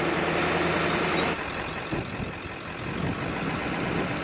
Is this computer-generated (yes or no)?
no